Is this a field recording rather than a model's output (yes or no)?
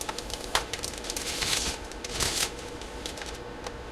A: no